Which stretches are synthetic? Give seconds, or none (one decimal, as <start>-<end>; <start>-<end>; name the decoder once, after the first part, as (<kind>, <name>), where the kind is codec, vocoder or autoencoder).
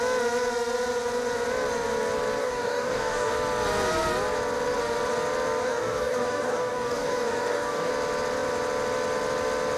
2.4-3.3 (codec, DAC); 5.6-7.9